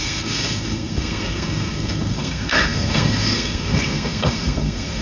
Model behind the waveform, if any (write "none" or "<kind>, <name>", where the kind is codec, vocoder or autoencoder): codec, SNAC